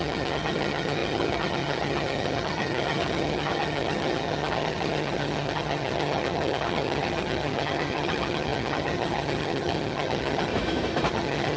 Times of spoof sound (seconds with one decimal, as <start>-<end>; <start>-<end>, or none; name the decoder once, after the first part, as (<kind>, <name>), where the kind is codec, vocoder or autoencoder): 0.0-10.5 (vocoder, HiFi-GAN); 11.1-11.6